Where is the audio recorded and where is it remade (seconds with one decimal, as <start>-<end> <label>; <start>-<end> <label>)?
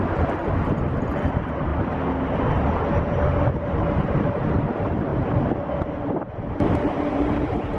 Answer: 0.0-0.4 remade; 0.4-1.1 recorded; 1.1-1.7 remade; 1.7-2.6 recorded; 2.6-5.1 remade; 5.1-5.8 recorded; 5.8-7.8 remade